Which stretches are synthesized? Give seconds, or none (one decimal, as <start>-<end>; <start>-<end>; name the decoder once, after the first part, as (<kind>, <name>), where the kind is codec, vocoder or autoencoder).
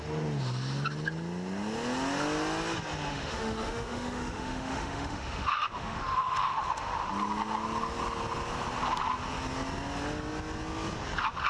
3.1-7.1 (autoencoder, DAC-VAE)